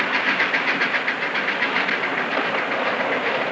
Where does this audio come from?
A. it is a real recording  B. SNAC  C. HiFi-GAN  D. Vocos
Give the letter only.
A